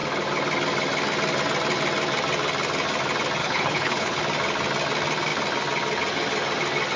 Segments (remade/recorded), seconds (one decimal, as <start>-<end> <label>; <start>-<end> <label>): 0.0-3.4 recorded; 3.4-4.2 remade; 4.2-7.0 recorded